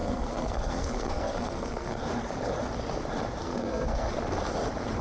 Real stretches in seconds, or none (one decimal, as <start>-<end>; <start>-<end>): 2.0-3.4; 4.1-5.0